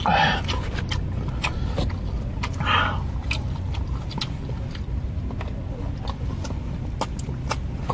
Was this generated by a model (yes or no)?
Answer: no